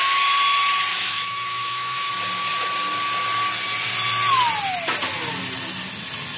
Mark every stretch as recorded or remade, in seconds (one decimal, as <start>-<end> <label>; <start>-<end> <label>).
0.0-0.9 recorded; 0.9-2.1 remade; 2.1-6.4 recorded